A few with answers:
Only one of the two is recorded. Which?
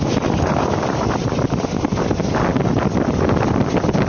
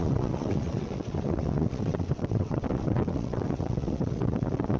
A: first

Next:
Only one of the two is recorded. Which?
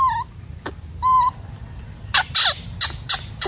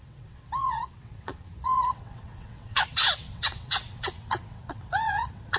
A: first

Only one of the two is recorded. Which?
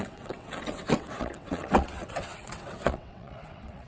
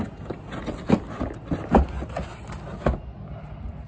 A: second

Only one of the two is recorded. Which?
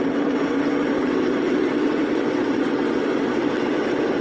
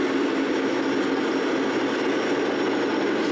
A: second